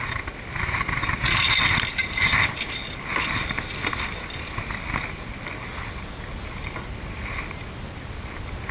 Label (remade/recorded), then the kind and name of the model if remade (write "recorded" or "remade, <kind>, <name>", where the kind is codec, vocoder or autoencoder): recorded